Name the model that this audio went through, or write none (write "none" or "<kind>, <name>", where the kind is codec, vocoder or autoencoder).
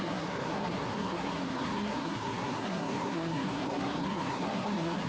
codec, SNAC